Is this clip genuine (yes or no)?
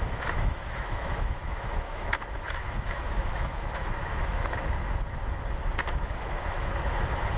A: no